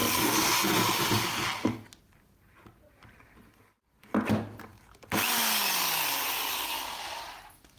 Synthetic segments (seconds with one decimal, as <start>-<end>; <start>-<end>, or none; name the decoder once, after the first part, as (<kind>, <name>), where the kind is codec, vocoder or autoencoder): 4.7-5.7 (vocoder, BigVGAN v2)